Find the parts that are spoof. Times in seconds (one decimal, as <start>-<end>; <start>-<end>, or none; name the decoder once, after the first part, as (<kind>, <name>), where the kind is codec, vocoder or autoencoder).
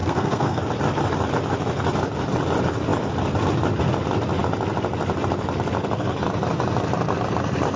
0.0-0.6 (codec, SNAC)